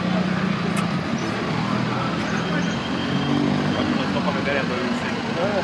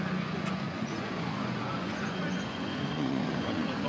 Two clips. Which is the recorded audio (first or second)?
first